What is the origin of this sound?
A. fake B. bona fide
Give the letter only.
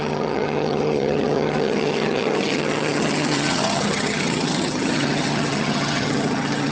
A